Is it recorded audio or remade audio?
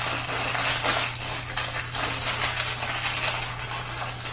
recorded